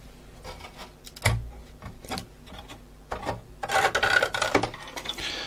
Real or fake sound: real